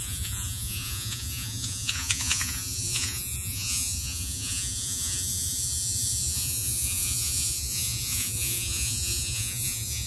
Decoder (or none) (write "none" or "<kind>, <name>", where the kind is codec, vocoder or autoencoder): vocoder, Vocos